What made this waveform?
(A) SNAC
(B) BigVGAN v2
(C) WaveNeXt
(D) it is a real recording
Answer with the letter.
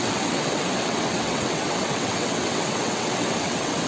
C